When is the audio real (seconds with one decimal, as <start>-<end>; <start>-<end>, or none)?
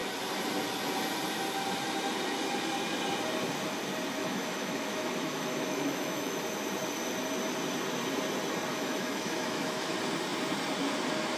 0.0-4.2; 6.4-8.7; 9.9-11.4